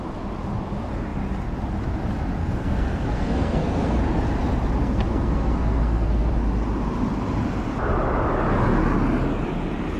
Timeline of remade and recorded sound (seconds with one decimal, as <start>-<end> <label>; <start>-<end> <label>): 0.0-2.4 recorded; 2.4-4.0 remade; 4.0-4.8 recorded; 4.8-6.3 remade; 6.3-10.0 recorded